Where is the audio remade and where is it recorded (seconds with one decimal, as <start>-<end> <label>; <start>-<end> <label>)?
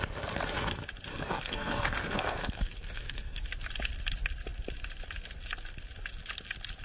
0.0-1.1 recorded; 1.1-3.4 remade; 3.4-6.8 recorded